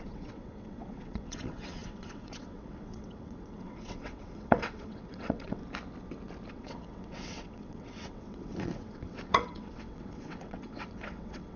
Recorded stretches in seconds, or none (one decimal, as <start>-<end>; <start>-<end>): 5.6-6.5